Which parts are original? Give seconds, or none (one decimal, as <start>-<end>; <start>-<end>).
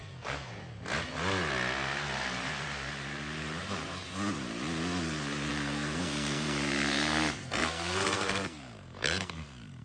0.5-5.5